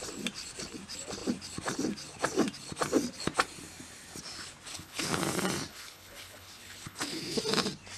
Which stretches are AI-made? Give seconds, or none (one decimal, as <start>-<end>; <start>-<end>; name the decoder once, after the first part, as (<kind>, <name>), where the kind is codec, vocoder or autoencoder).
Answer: 4.7-5.2 (codec, HILCodec); 5.7-7.4